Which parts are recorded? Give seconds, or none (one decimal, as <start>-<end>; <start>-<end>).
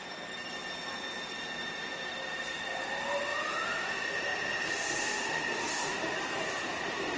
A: 0.0-0.6; 2.1-3.3; 3.9-7.2